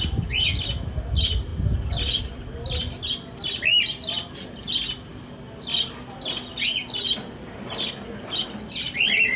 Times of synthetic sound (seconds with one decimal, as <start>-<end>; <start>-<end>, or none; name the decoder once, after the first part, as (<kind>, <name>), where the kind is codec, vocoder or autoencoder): none